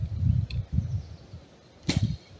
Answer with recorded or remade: recorded